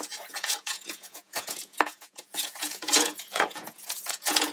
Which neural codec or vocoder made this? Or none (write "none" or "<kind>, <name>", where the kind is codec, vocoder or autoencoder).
vocoder, Vocos